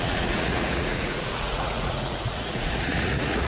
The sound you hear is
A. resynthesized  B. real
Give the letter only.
A